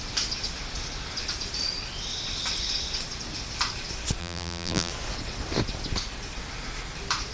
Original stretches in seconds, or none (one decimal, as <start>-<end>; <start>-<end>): 0.0-4.2; 4.9-7.3